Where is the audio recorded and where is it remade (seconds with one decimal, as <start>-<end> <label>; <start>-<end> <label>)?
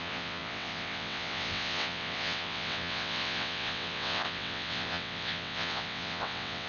0.0-6.7 remade